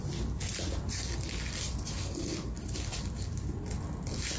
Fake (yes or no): no